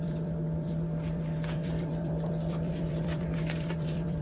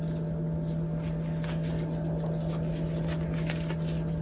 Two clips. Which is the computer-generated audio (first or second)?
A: first